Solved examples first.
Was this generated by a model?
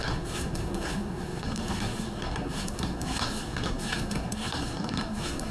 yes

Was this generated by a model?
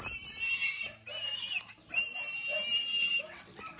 no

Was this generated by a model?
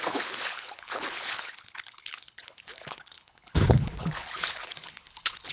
yes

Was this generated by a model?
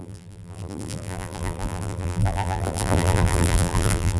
yes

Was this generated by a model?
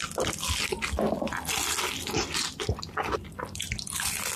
no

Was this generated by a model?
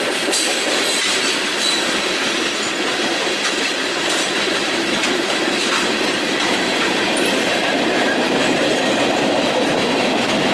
yes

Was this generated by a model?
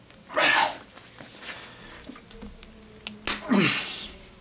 no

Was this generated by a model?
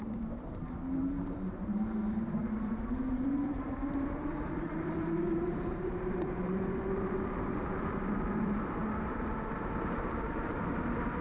yes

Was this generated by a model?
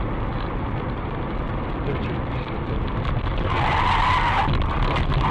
no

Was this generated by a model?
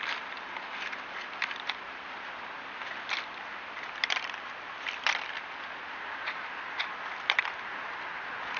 yes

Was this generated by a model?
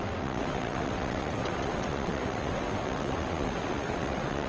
yes